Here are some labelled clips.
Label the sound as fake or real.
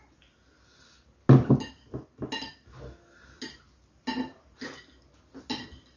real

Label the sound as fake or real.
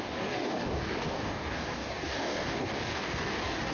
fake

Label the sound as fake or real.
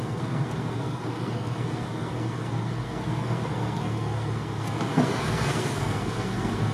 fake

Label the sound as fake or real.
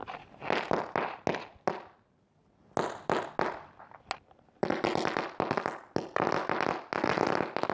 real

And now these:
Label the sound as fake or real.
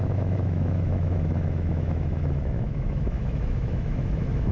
fake